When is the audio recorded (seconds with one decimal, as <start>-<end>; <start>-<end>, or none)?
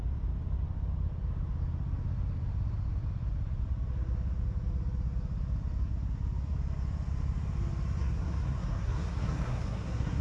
0.0-8.0